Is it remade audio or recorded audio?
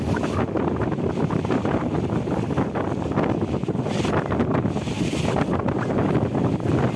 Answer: remade